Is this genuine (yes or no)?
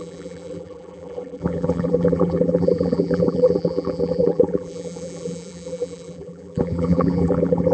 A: no